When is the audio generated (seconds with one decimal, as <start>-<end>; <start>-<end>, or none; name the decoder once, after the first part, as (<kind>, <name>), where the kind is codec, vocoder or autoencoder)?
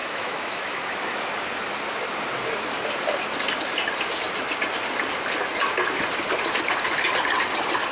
0.0-1.3 (autoencoder, DAC-VAE)